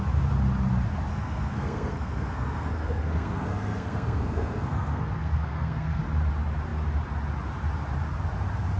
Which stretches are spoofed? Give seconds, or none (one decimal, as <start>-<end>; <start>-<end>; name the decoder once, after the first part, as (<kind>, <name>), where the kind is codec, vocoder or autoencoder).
1.1-6.0 (codec, SNAC)